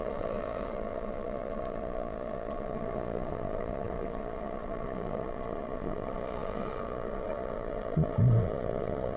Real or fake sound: fake